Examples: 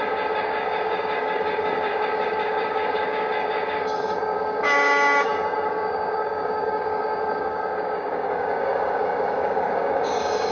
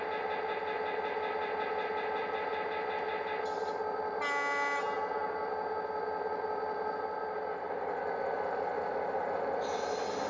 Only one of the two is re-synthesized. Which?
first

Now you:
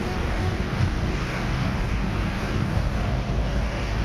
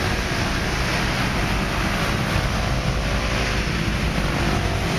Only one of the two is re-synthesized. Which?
first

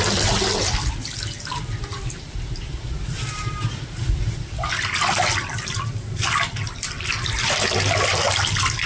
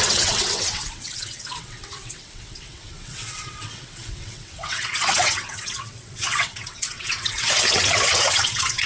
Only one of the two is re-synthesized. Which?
second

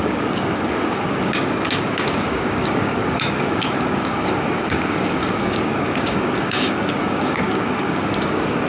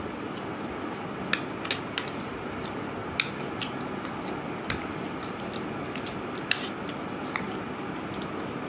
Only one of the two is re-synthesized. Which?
first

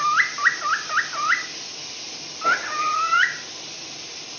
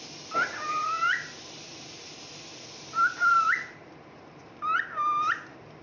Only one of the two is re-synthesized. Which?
first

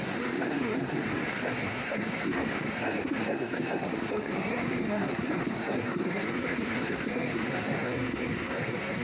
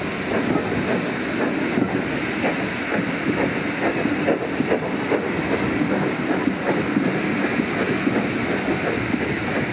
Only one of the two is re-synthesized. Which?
first